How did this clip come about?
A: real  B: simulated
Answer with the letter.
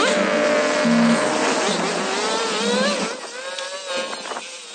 A